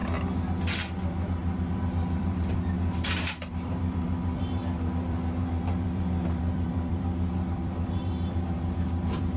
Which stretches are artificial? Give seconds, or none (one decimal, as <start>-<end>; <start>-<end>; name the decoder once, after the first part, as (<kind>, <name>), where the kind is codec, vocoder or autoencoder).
1.7-9.4 (vocoder, BigVGAN v2)

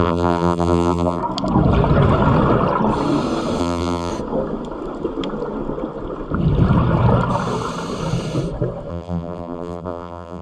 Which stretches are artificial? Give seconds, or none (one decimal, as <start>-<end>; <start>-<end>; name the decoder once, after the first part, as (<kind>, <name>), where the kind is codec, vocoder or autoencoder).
0.0-1.2 (vocoder, BigVGAN v2); 3.6-4.1; 8.9-10.4

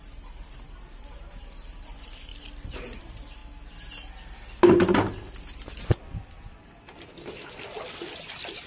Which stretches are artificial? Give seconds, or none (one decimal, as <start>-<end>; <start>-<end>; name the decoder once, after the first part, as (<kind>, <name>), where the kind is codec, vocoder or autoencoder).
0.0-2.3 (vocoder, BigVGAN v2); 3.0-3.4

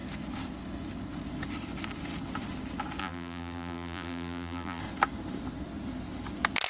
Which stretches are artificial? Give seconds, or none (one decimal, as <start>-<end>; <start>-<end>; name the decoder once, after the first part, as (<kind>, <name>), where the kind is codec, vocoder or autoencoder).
3.0-4.8 (vocoder, BigVGAN v2)